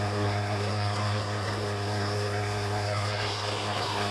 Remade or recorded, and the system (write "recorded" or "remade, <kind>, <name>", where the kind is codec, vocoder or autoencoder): remade, codec, SNAC